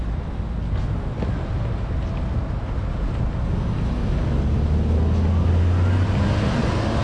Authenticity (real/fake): real